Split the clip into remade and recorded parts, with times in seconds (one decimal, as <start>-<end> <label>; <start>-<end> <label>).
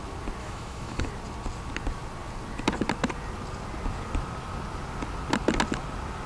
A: 0.0-0.4 recorded; 0.4-1.1 remade; 1.1-6.3 recorded